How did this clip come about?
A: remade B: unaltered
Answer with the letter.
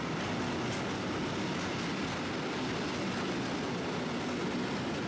B